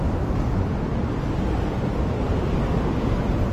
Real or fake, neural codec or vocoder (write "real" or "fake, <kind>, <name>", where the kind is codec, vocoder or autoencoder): real